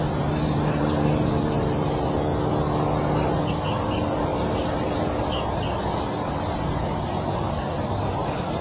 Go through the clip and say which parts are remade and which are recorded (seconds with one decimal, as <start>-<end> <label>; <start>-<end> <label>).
0.0-2.3 remade; 2.3-3.5 recorded; 3.5-8.6 remade